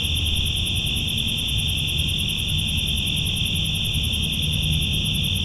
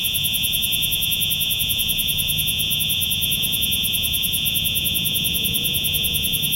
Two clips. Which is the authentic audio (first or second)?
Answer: first